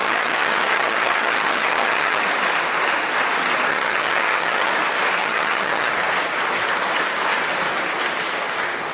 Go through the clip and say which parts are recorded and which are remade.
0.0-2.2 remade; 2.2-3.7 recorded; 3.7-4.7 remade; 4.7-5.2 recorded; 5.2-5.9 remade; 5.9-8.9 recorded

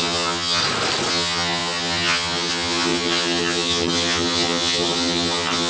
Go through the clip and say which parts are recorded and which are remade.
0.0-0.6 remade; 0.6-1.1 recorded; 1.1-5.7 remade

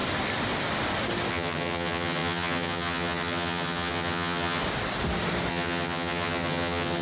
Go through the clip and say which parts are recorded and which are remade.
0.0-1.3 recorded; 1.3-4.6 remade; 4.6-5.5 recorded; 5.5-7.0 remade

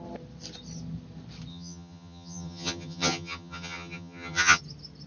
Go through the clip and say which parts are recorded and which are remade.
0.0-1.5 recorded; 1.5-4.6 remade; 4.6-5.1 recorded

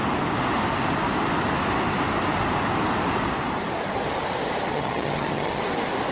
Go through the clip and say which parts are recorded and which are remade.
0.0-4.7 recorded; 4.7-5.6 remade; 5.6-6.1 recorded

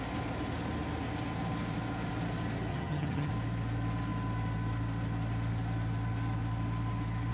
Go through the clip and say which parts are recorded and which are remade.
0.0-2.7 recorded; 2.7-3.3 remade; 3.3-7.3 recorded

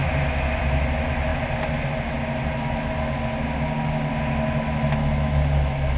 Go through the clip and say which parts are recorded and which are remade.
0.0-6.0 recorded

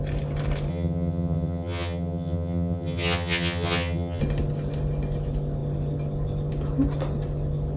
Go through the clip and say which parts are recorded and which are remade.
0.0-0.7 recorded; 0.7-4.2 remade; 4.2-7.8 recorded